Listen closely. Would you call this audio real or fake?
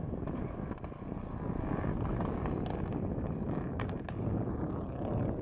real